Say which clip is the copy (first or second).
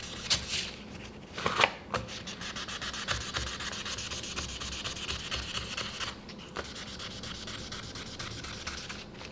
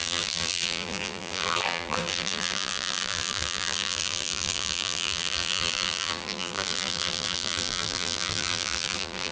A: second